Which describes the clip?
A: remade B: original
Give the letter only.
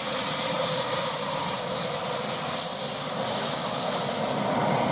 A